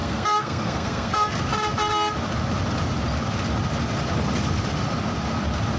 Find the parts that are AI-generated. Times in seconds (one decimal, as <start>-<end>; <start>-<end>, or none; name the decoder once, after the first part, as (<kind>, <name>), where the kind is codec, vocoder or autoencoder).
0.0-1.4 (codec, SNAC)